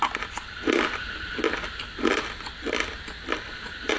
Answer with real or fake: real